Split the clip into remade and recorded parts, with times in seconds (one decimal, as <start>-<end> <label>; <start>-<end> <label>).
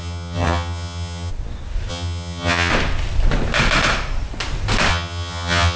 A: 0.0-1.3 remade; 1.3-1.9 recorded; 1.9-2.7 remade; 2.7-4.9 recorded; 4.9-5.8 remade